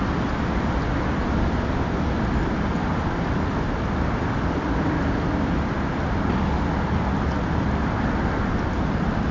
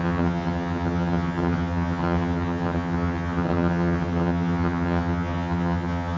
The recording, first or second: first